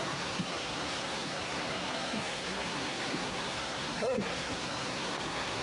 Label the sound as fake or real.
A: fake